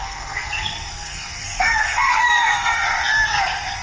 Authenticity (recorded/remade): remade